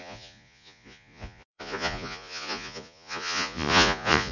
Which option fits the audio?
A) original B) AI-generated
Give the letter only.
B